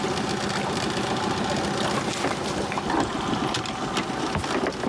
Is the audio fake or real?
real